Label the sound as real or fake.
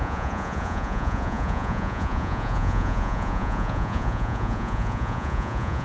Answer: fake